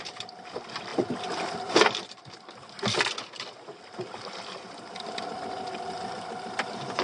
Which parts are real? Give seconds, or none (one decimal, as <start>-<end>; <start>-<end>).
0.9-5.1